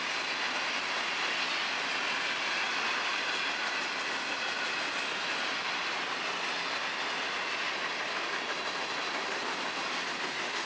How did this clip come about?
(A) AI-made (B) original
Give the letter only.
B